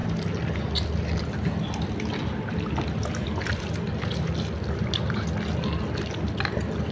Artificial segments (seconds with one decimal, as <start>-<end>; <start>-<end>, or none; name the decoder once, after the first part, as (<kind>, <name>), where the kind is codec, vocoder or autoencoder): none